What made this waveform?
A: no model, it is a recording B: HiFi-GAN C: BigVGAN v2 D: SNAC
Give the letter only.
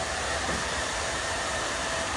C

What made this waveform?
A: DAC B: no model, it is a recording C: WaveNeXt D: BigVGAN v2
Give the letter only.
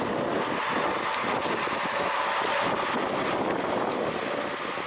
B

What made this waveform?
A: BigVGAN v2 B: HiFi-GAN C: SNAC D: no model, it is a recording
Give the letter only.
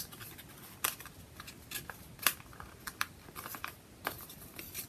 D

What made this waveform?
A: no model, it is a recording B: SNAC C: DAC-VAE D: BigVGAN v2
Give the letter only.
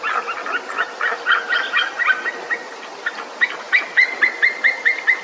A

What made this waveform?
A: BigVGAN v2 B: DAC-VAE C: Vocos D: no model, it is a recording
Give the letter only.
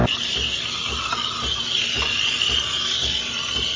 A